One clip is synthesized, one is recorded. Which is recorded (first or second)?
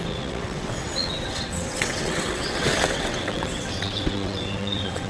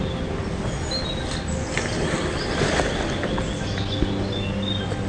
second